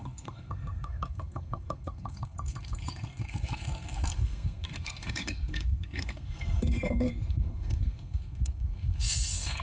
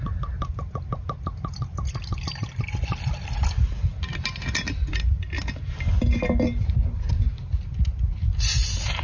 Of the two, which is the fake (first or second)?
first